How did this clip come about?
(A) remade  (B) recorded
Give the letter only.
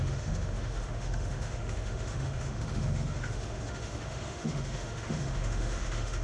A